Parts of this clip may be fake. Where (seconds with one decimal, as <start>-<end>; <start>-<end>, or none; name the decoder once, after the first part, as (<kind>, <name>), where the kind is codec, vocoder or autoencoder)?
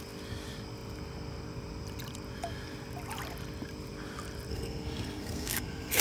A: 4.5-6.0 (codec, SNAC)